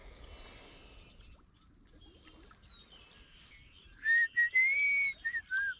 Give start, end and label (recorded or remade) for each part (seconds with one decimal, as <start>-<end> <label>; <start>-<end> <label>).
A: 0.0-5.8 recorded